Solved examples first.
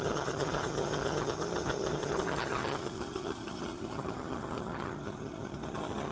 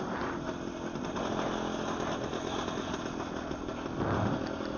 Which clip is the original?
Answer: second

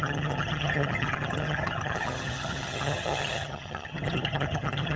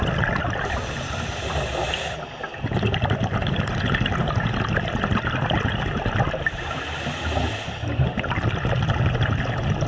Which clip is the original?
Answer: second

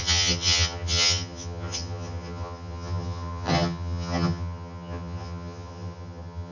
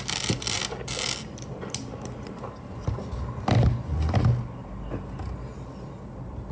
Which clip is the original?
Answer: second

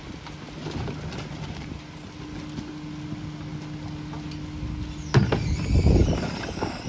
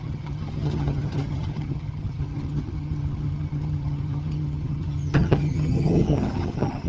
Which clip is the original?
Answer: first